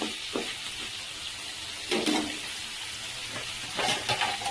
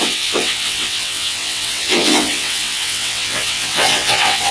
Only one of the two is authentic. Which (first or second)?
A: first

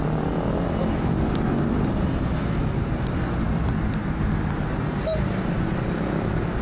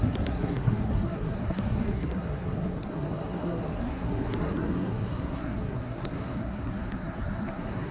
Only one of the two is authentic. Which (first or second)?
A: first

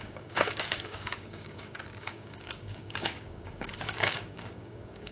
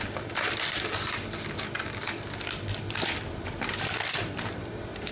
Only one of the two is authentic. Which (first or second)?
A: second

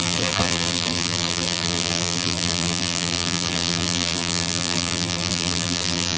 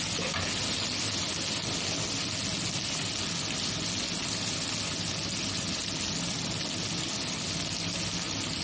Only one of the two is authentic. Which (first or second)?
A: second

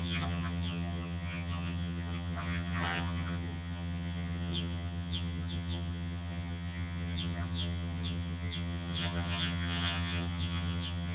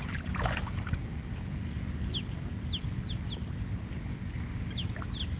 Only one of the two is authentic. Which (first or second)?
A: second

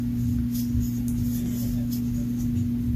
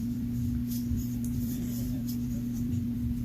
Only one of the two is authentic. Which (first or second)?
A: first